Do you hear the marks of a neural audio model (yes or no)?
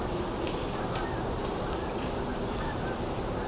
yes